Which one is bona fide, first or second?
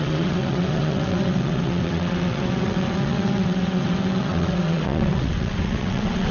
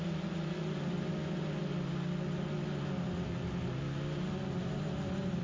second